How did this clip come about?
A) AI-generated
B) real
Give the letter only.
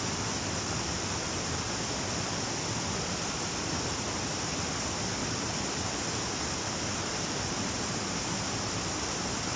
B